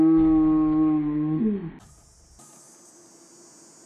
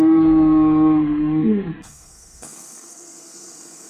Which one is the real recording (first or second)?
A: first